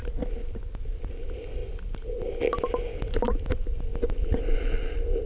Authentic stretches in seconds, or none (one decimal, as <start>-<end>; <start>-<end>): 0.0-5.3

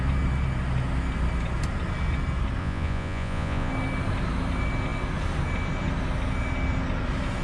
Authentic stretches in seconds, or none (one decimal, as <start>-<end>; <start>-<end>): 0.0-2.6; 3.7-7.4